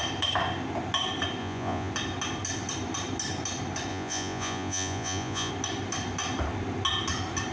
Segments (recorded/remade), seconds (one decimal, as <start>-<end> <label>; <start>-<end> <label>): 0.0-1.4 recorded; 1.4-1.9 remade; 1.9-3.9 recorded; 3.9-5.5 remade; 5.5-7.5 recorded